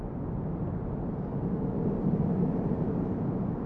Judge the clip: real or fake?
real